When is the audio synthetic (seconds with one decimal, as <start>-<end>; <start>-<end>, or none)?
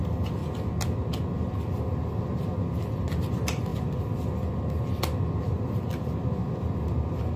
0.0-0.4; 3.3-3.7; 5.6-6.4